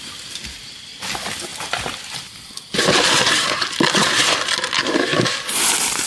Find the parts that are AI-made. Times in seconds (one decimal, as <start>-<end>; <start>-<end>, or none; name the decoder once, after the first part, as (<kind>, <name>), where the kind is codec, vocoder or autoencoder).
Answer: 4.8-5.4 (codec, DAC)